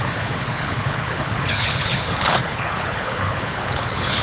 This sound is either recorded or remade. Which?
remade